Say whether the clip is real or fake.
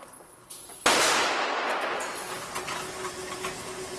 real